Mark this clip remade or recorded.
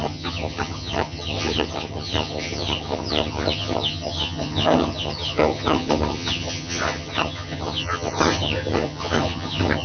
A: remade